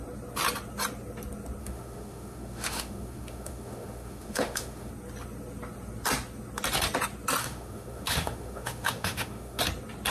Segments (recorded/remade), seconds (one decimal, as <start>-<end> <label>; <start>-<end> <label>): 0.0-1.6 recorded; 1.6-4.9 remade; 4.9-7.4 recorded; 7.4-9.6 remade; 9.6-10.1 recorded